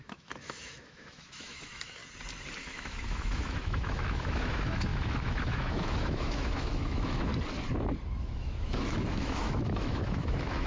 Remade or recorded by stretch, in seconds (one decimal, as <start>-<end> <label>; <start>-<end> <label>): 0.0-2.0 remade; 2.0-2.6 recorded; 2.6-7.3 remade; 7.3-8.2 recorded; 8.2-10.7 remade